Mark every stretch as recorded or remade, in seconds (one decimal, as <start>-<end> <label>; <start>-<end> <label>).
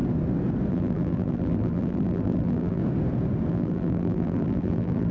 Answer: 0.0-0.7 recorded; 0.7-2.8 remade; 2.8-3.5 recorded; 3.5-5.1 remade